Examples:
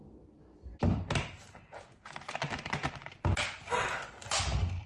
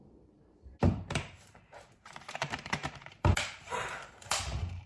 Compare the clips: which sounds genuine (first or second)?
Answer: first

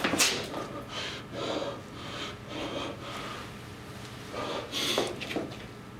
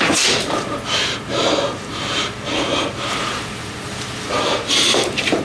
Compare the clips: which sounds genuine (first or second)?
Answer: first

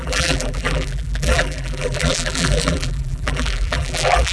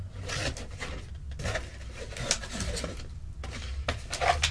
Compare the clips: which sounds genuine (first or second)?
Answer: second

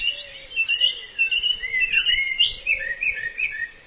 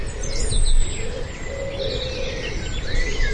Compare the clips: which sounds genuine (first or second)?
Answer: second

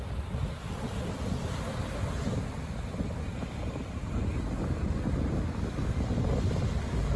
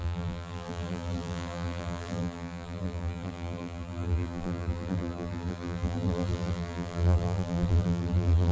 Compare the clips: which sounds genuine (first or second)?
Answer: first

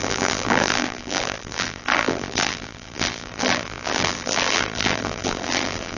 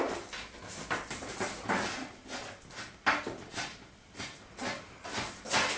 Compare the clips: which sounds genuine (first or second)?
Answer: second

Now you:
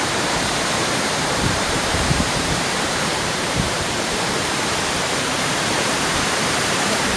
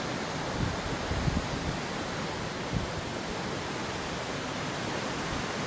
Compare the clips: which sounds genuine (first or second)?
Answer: second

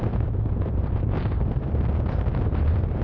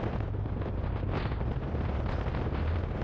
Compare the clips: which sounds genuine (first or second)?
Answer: second